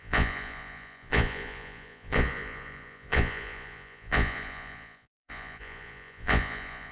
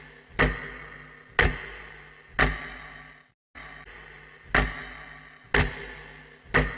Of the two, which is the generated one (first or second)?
first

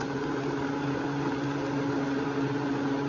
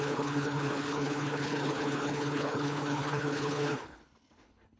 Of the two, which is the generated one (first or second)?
second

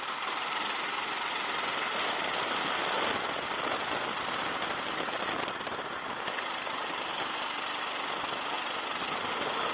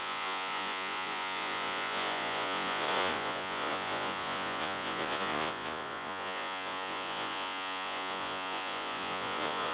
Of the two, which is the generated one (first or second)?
second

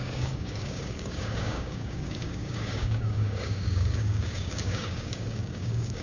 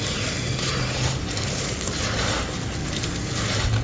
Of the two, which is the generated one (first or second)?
first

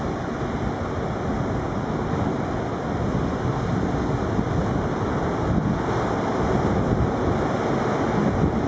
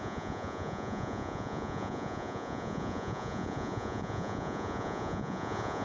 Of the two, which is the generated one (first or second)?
second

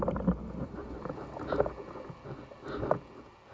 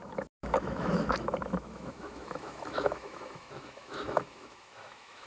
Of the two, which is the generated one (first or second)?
second